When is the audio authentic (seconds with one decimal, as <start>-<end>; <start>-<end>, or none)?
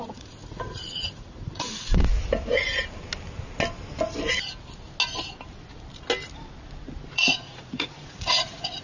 2.1-7.1